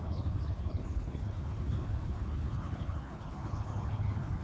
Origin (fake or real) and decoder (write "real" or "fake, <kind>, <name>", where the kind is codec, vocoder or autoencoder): fake, codec, HILCodec